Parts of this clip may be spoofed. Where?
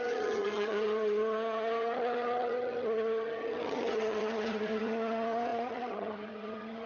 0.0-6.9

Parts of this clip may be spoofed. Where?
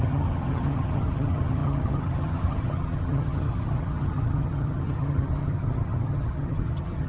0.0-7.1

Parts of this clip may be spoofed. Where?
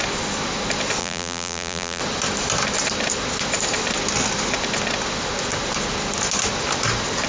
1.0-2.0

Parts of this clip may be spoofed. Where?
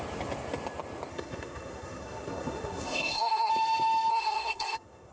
1.1-3.5; 4.1-5.1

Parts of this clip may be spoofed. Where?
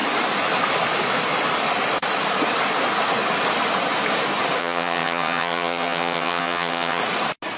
4.6-7.0